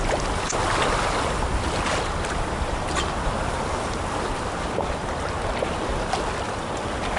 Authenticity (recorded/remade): recorded